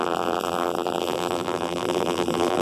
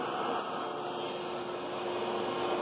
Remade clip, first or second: first